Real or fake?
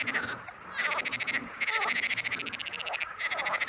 real